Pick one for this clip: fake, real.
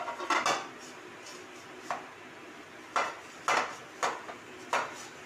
real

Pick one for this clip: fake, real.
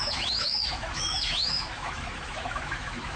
fake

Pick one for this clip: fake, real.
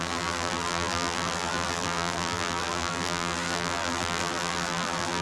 fake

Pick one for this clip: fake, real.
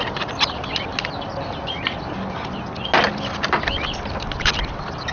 real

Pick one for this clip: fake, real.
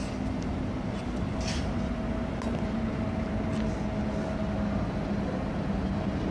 real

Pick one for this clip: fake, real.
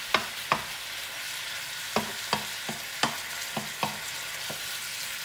real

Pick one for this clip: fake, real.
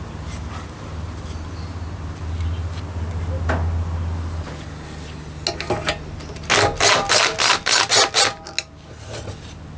real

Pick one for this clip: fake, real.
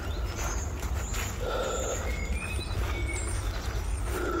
real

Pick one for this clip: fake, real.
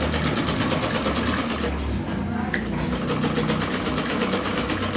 real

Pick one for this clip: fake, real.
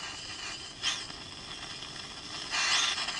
real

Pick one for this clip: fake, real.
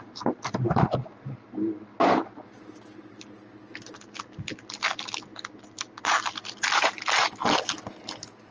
real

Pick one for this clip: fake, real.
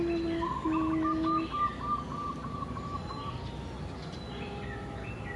real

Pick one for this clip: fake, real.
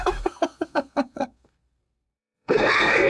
fake